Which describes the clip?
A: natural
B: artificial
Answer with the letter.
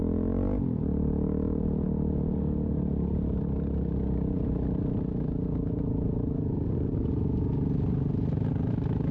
A